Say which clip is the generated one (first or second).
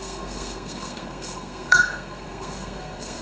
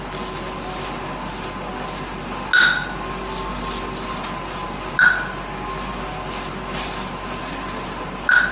first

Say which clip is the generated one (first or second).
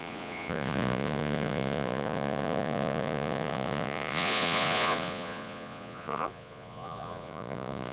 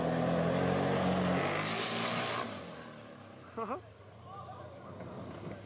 first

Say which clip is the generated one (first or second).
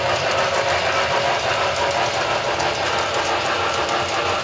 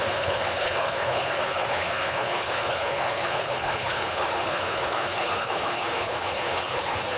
second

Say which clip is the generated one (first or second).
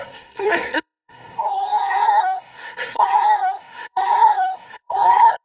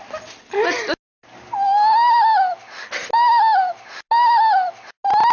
first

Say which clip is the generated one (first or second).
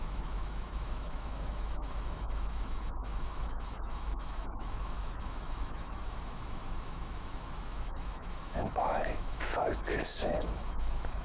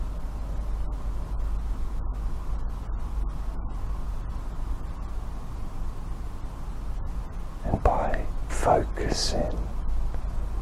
first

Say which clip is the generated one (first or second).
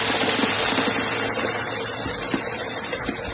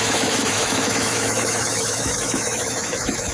second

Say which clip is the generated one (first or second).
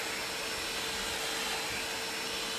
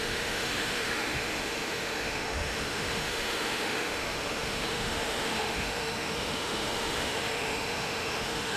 second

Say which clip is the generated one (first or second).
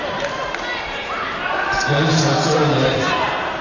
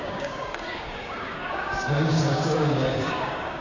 second